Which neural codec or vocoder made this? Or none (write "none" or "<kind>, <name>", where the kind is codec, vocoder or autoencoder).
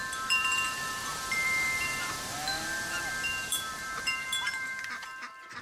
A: vocoder, BigVGAN v2